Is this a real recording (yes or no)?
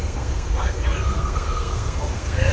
no